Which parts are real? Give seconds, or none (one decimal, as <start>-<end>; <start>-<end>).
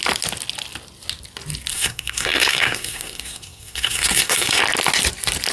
0.0-1.7; 4.6-5.5